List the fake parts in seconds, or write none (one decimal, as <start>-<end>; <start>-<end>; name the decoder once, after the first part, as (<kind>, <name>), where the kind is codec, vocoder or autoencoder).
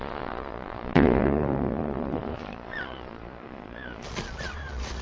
0.0-5.0 (vocoder, Vocos)